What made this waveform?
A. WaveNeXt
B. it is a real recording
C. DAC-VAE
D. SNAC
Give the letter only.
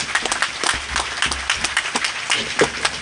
B